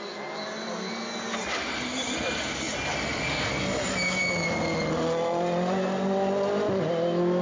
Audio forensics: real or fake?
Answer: real